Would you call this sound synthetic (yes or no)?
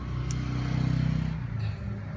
no